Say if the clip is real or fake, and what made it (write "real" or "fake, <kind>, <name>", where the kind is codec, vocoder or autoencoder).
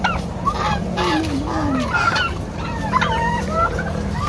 fake, vocoder, BigVGAN v2